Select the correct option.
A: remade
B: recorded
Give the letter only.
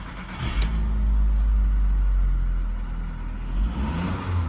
B